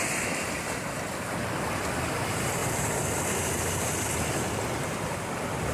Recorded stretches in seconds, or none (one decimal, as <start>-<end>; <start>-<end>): 2.6-3.8

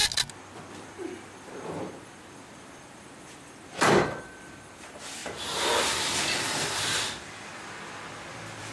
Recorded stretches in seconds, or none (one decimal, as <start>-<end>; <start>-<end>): 0.0-0.7; 5.2-5.8; 7.5-8.1

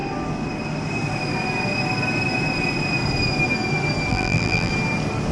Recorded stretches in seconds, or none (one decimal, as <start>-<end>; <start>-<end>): 0.0-4.1; 4.7-5.3

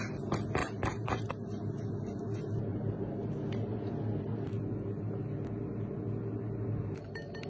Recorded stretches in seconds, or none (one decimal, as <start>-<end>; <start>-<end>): 0.0-0.6; 1.3-2.7; 3.3-7.5